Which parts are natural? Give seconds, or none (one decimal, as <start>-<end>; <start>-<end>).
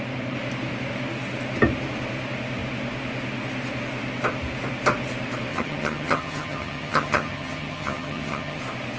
0.0-5.5; 8.6-9.0